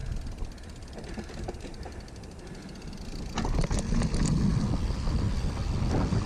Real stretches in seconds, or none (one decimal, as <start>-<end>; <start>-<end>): 0.0-6.3